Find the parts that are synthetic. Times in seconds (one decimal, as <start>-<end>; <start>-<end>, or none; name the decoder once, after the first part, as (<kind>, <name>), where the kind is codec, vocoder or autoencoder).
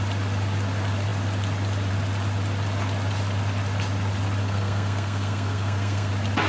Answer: 4.4-6.1 (codec, SNAC)